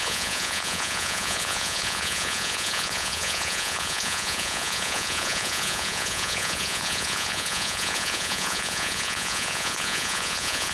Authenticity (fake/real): fake